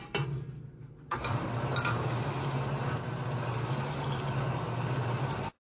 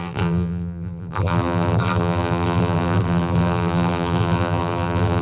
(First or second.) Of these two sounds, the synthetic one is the second